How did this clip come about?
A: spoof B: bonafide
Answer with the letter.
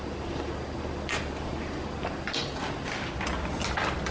B